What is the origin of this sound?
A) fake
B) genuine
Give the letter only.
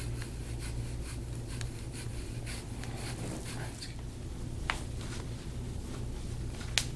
B